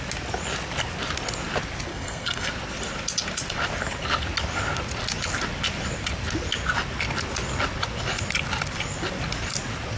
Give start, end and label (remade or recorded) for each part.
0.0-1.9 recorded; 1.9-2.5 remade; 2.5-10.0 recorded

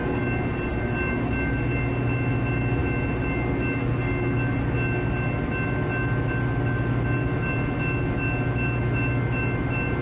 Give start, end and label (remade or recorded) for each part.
0.0-10.0 recorded

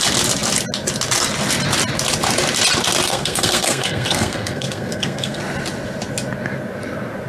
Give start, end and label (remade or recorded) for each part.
0.0-3.1 recorded; 3.1-5.4 remade; 5.4-7.3 recorded

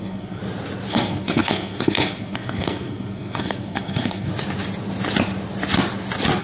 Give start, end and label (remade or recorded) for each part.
0.0-0.4 remade; 0.4-0.9 recorded; 0.9-4.3 remade; 4.3-6.4 recorded

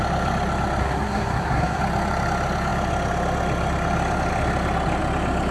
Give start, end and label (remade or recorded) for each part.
0.0-0.8 recorded; 0.8-1.8 remade; 1.8-5.5 recorded

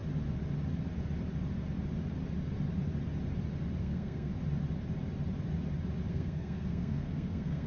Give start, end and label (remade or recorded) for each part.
0.0-3.8 recorded; 3.8-4.3 remade; 4.3-6.1 recorded; 6.1-7.7 remade

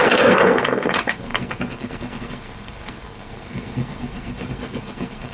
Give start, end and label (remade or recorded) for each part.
0.0-5.3 remade

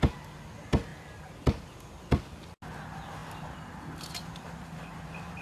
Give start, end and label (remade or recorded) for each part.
0.0-5.4 recorded